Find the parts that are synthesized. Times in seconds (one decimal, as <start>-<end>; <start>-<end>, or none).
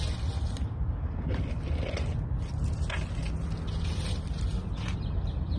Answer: none